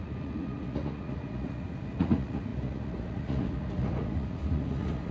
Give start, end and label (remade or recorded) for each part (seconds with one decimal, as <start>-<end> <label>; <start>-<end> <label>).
0.0-5.1 remade